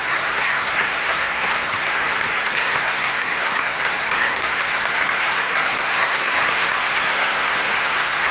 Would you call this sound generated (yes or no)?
yes